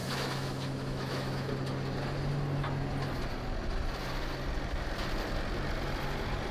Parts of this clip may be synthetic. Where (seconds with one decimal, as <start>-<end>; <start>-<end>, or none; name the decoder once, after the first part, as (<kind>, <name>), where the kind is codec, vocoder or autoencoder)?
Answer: 0.0-1.5 (autoencoder, DAC-VAE)